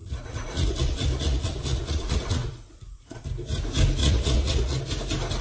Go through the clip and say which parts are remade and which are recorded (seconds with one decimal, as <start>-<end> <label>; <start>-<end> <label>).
0.0-3.2 remade; 3.2-4.0 recorded; 4.0-4.8 remade; 4.8-5.4 recorded